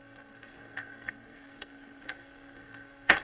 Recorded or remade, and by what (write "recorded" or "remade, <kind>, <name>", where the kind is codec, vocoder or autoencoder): remade, codec, SNAC